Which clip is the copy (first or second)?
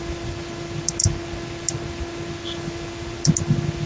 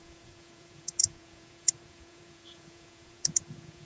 second